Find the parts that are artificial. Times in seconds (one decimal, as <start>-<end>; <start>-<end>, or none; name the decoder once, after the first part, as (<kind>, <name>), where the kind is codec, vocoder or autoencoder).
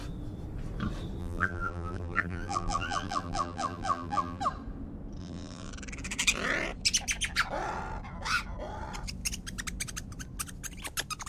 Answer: 1.2-4.4 (vocoder, BigVGAN v2); 5.2-5.7